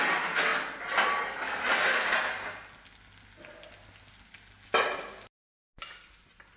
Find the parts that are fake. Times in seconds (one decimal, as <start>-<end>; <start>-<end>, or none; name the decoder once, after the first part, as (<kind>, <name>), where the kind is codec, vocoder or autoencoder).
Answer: none